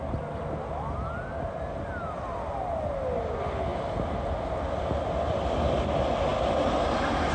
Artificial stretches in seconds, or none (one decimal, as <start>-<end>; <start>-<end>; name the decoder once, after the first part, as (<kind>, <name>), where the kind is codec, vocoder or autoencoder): none

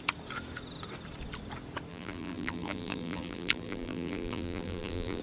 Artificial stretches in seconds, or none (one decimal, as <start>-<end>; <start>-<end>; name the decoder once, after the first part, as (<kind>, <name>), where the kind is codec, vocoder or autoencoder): 1.9-5.2 (vocoder, BigVGAN v2)